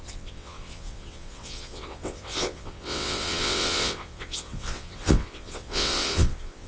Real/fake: fake